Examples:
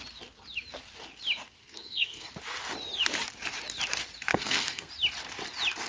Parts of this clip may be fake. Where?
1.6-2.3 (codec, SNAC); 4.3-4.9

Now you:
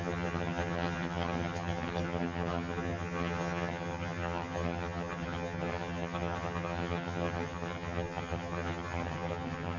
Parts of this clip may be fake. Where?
0.0-9.8 (vocoder, HiFi-GAN)

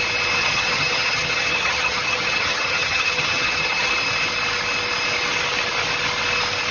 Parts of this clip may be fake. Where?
0.4-3.9 (vocoder, HiFi-GAN)

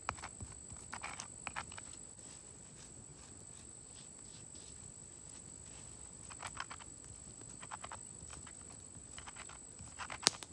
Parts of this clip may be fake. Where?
none

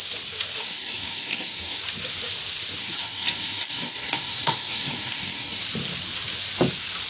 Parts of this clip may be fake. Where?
0.6-1.8 (codec, DAC); 2.8-5.6

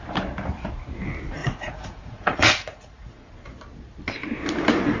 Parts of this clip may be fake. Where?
1.4-3.3 (vocoder, Vocos)